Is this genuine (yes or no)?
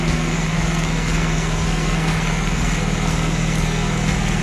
no